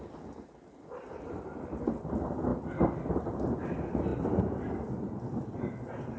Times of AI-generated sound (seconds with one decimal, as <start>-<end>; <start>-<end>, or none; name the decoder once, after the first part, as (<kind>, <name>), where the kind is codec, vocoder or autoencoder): none